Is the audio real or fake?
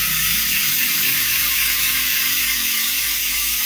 fake